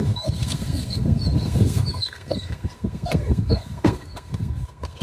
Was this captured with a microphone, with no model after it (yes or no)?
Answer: no